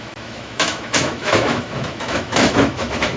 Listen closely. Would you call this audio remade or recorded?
remade